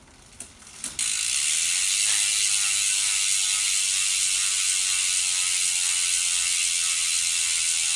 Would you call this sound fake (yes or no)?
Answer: no